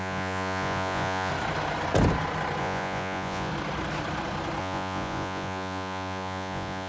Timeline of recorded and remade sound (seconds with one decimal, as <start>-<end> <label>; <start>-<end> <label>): 0.0-1.3 remade; 1.3-2.6 recorded; 2.6-3.5 remade; 3.5-4.6 recorded; 4.6-6.9 remade